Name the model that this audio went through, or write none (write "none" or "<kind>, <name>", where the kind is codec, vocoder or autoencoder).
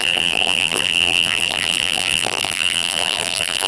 vocoder, BigVGAN v2